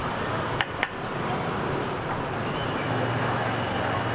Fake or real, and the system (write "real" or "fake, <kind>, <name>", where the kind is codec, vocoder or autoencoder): real